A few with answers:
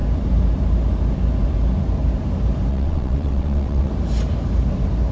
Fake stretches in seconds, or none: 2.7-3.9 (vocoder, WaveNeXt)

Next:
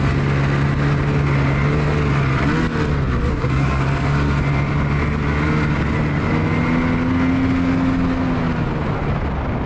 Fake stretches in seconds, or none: 3.3-3.8 (codec, SNAC)

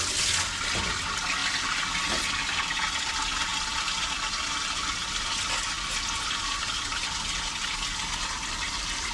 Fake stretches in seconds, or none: none

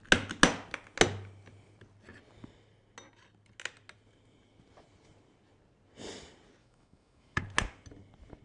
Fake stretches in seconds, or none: 6.6-7.4 (autoencoder, DAC-VAE)